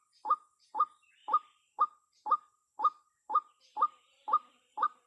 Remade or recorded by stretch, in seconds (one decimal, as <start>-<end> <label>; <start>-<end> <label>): 0.0-1.2 recorded; 1.2-1.8 remade; 1.8-2.6 recorded; 2.6-3.6 remade; 3.6-4.2 recorded; 4.2-5.1 remade